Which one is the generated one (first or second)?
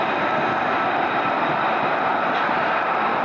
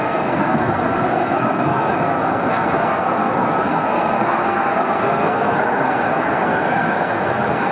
second